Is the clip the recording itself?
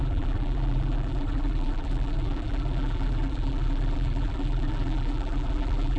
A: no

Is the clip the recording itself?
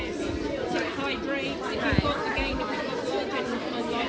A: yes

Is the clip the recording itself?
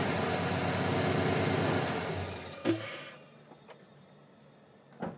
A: yes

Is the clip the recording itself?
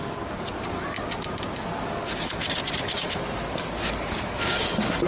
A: yes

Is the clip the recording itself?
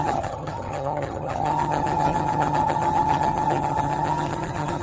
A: no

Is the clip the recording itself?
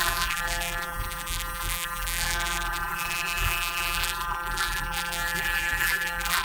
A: no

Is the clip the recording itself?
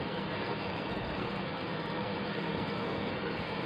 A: no